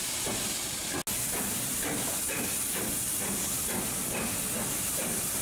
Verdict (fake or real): real